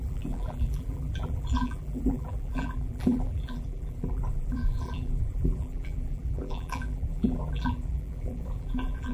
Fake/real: fake